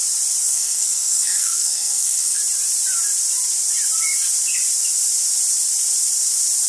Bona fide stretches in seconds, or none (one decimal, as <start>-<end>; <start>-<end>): 0.0-0.5; 2.4-6.7